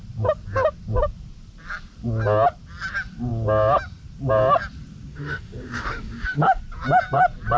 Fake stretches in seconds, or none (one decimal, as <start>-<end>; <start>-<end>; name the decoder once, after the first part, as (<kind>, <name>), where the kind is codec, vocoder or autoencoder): 5.1-6.6 (autoencoder, DAC-VAE)